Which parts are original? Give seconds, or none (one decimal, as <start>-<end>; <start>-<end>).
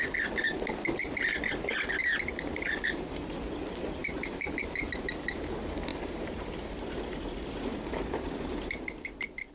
0.0-1.0; 1.5-4.0; 5.5-5.9; 8.7-9.5